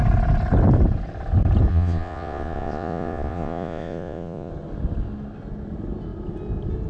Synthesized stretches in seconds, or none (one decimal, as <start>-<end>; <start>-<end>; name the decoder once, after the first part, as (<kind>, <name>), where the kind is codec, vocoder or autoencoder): 1.7-4.5 (vocoder, Vocos)